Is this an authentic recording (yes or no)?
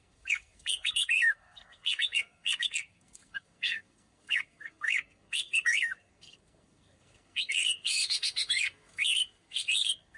no